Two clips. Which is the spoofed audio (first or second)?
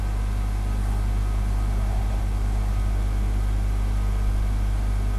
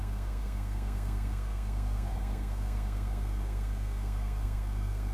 second